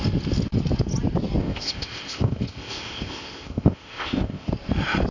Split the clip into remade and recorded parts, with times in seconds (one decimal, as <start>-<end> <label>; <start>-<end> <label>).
0.0-1.4 recorded; 1.4-4.5 remade; 4.5-5.1 recorded